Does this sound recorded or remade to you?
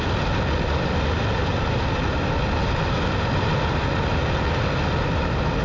recorded